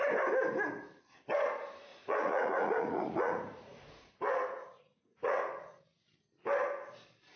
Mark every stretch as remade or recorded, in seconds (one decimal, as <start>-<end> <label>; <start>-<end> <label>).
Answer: 0.0-1.9 recorded; 1.9-4.2 remade; 4.2-4.9 recorded; 4.9-5.5 remade; 5.5-7.4 recorded